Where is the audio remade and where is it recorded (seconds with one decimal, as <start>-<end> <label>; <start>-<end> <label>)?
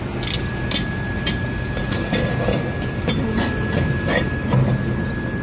0.0-5.4 recorded